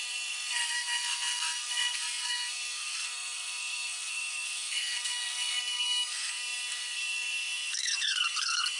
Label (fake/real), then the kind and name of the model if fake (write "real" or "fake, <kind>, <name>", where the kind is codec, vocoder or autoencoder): fake, codec, SNAC